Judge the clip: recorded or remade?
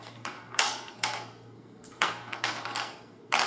remade